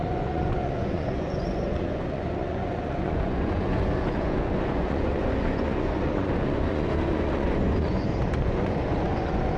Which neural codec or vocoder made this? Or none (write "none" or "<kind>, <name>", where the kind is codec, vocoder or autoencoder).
vocoder, Vocos